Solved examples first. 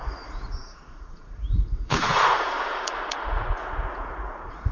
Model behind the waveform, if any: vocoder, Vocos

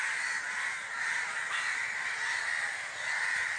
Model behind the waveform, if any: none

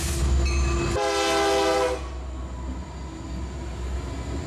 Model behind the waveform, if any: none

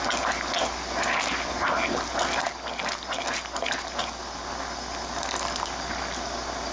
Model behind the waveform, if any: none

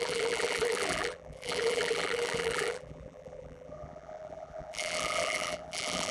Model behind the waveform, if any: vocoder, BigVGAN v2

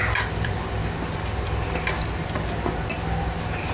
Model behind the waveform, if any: vocoder, BigVGAN v2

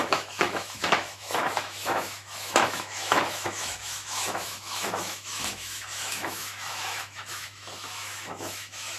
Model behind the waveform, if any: autoencoder, DAC-VAE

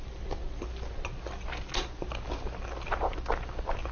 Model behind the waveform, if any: none